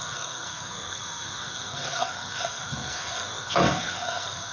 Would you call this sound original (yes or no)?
no